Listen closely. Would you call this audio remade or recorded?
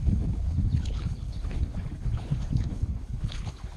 remade